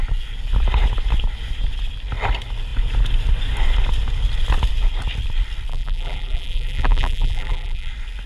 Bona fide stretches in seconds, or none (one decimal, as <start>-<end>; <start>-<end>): 0.0-5.7; 7.9-8.3